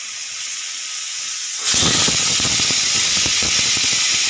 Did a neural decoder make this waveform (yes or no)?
yes